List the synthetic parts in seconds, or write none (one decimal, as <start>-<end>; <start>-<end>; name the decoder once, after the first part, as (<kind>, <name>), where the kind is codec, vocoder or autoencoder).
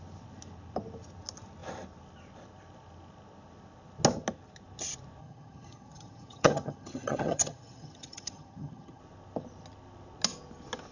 5.2-9.0 (vocoder, HiFi-GAN)